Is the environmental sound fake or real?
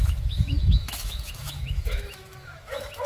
fake